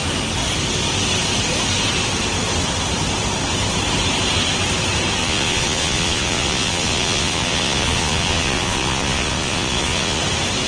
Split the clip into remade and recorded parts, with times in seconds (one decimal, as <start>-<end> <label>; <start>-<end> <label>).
0.0-5.2 recorded; 5.2-10.2 remade; 10.2-10.7 recorded